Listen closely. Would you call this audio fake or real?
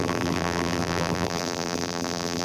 fake